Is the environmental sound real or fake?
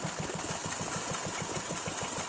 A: real